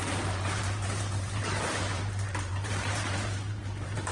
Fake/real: fake